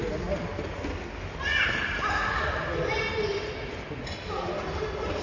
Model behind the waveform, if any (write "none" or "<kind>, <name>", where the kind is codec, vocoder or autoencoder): none